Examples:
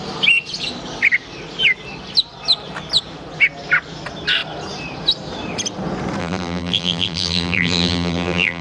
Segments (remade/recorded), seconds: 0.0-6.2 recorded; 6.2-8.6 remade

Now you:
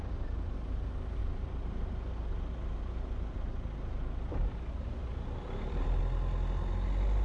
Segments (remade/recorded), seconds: 0.0-1.2 recorded; 1.2-4.3 remade; 4.3-5.1 recorded; 5.1-6.0 remade; 6.0-7.2 recorded

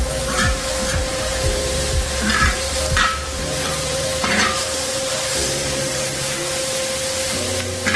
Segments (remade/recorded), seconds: 0.0-6.4 remade; 6.4-8.0 recorded

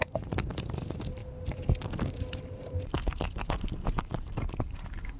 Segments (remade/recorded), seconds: 0.0-1.2 remade; 1.2-2.1 recorded; 2.1-5.2 remade

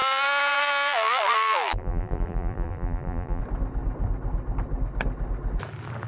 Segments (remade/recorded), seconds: 0.0-3.4 remade; 3.4-6.1 recorded

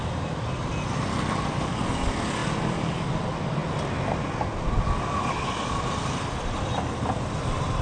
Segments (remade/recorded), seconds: 0.0-0.6 remade; 0.6-7.8 recorded

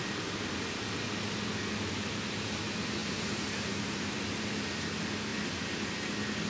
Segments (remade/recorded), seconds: 0.0-3.0 recorded; 3.0-4.4 remade; 4.4-6.5 recorded